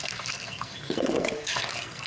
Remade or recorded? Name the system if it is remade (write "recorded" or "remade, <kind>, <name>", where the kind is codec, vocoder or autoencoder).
remade, codec, SNAC